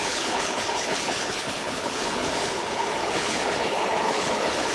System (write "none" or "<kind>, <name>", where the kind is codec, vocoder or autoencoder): codec, HILCodec